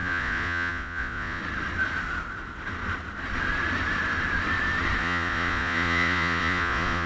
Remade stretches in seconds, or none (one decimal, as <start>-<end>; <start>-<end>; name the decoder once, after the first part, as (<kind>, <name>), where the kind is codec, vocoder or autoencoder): 0.0-1.4 (vocoder, Vocos); 5.0-7.1